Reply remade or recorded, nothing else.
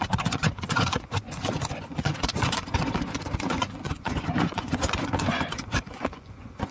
remade